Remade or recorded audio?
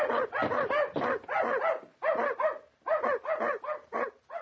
recorded